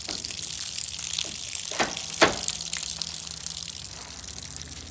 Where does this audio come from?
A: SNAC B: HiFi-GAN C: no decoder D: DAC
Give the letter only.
C